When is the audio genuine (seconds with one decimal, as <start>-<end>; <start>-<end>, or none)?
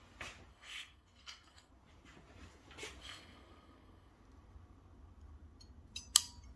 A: 0.0-0.5; 1.7-3.0; 4.1-6.6